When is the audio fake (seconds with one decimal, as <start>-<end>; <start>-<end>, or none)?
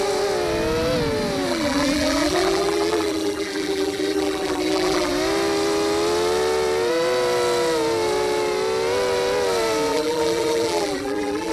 1.5-5.1; 9.9-11.5